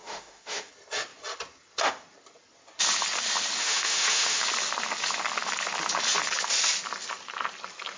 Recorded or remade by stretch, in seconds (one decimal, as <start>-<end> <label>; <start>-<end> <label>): 0.0-0.7 remade; 0.7-3.6 recorded; 3.6-4.4 remade; 4.4-8.0 recorded